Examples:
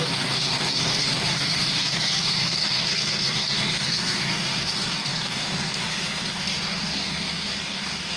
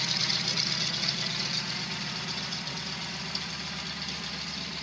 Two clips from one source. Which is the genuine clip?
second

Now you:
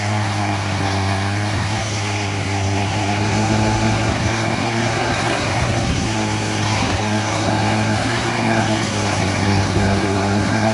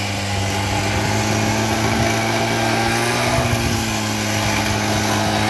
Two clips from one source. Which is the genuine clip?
second